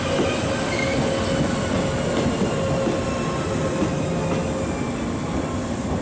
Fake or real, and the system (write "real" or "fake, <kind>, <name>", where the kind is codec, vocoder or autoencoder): real